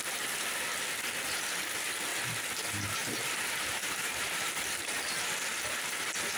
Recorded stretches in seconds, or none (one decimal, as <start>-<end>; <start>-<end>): 0.0-3.0; 5.5-6.4